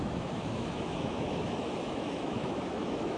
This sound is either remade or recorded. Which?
remade